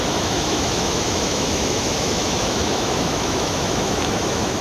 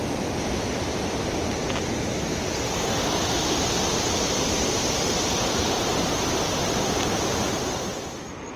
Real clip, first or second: second